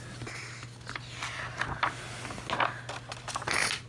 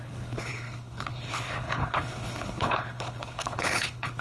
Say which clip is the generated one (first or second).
second